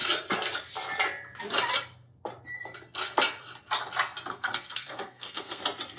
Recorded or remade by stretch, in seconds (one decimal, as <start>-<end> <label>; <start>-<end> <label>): 0.0-4.3 recorded; 4.3-5.6 remade; 5.6-6.0 recorded